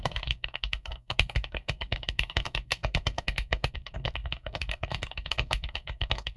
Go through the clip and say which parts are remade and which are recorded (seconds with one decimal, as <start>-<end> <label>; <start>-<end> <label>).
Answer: 0.0-6.4 remade